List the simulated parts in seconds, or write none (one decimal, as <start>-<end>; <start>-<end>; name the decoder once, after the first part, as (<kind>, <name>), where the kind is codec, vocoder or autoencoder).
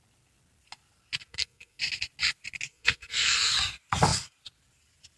1.3-1.8 (codec, SNAC); 2.7-3.5